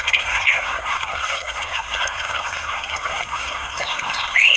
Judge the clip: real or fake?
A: fake